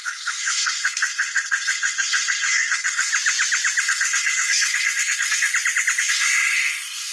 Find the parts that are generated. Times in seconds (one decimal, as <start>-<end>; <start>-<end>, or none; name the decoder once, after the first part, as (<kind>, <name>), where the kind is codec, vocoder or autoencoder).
0.0-3.1 (codec, SNAC); 3.8-5.5; 6.0-7.1